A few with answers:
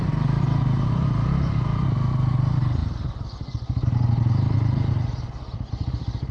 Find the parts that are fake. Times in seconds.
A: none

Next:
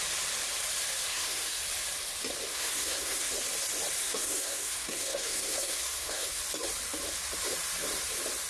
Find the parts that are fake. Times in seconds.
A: 1.1-1.6 (codec, SNAC); 2.5-3.3; 4.0-6.4

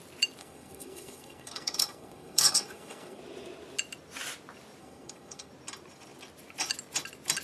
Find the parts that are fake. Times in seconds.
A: 0.4-3.2 (codec, SNAC); 4.8-5.5

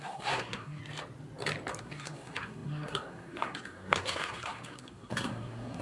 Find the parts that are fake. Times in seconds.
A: 0.0-0.8 (codec, SNAC); 1.8-5.8

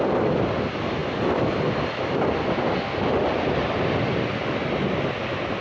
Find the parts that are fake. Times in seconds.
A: none